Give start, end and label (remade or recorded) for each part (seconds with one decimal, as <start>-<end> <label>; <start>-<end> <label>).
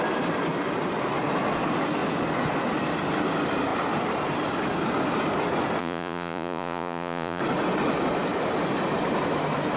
0.0-5.8 recorded; 5.8-7.4 remade; 7.4-9.8 recorded